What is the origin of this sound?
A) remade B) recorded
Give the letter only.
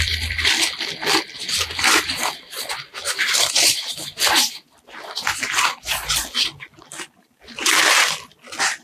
A